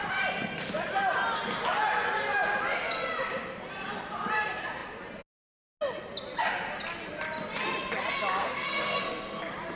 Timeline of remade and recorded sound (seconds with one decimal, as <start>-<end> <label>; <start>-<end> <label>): 0.0-8.4 recorded; 8.4-9.4 remade; 9.4-9.8 recorded